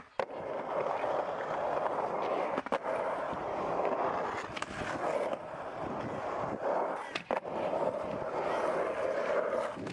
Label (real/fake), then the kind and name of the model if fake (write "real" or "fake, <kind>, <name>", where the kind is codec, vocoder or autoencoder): real